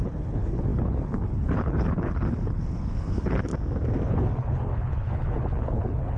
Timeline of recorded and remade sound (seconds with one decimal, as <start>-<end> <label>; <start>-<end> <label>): 0.0-3.5 remade; 3.5-4.1 recorded; 4.1-6.2 remade